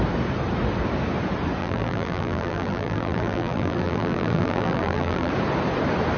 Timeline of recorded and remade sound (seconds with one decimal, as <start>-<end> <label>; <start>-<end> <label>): 0.0-1.6 recorded; 1.6-5.3 remade; 5.3-6.2 recorded